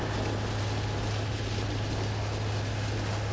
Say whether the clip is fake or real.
real